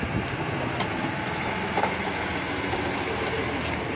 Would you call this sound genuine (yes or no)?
yes